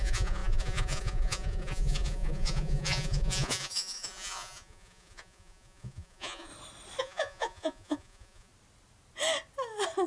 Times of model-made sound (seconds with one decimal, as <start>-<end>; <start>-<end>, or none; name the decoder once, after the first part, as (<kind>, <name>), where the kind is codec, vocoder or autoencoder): 0.0-6.5 (vocoder, Vocos); 7.0-8.5